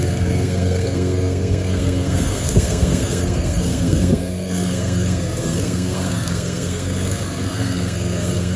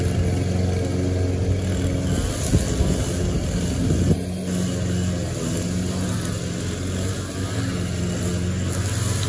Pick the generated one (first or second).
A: first